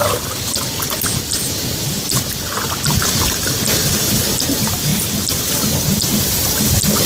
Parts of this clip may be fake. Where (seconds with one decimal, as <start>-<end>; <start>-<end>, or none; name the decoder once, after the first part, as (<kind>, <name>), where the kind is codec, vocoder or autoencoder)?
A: none